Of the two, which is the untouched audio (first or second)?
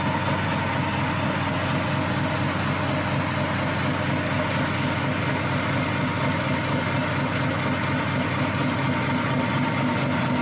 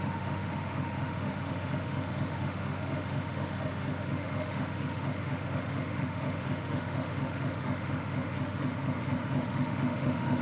first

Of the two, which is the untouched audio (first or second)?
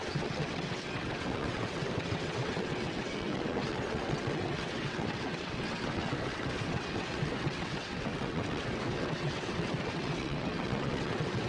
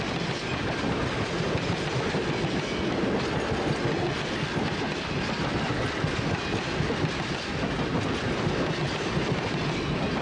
second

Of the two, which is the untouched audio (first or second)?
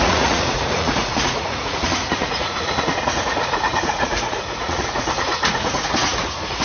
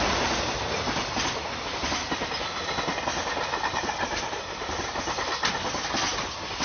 second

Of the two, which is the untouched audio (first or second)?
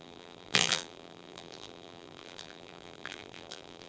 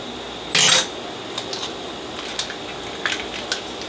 second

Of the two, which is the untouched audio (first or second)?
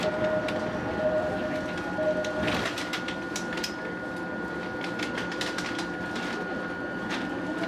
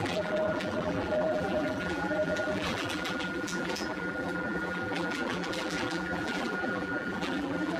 first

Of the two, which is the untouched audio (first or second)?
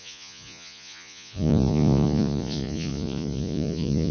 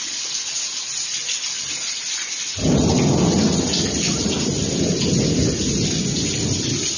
second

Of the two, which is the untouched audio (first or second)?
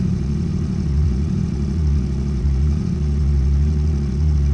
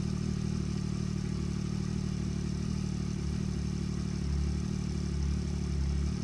second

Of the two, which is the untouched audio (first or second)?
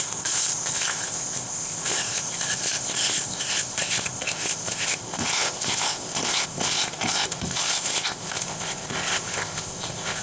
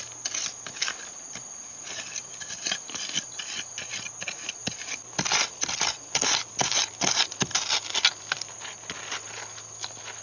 second